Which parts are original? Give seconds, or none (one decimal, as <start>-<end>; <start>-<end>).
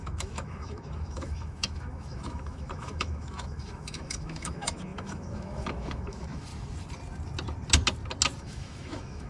6.5-8.4